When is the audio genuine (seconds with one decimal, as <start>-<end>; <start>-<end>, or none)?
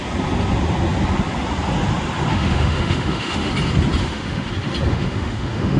0.0-2.3; 3.5-4.0; 4.5-4.9